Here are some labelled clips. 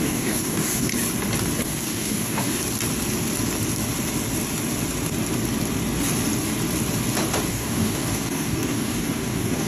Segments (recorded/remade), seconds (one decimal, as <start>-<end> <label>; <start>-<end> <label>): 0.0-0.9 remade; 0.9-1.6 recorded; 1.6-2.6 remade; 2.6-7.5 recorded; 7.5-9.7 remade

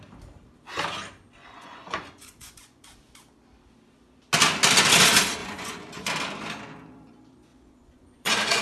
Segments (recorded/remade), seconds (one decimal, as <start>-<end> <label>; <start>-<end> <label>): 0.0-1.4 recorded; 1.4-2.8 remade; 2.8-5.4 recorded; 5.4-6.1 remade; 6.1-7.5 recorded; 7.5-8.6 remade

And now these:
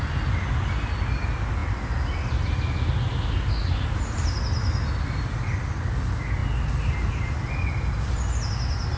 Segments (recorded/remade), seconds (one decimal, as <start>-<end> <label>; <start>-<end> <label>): 0.0-9.0 recorded